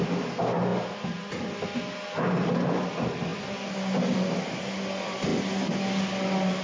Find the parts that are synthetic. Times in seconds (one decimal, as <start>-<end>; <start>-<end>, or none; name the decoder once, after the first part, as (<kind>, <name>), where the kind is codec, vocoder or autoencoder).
0.7-1.5 (vocoder, BigVGAN v2)